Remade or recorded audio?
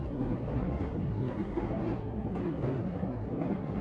remade